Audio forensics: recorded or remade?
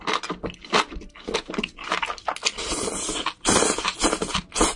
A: recorded